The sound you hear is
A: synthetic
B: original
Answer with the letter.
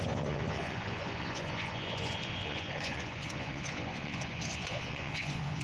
A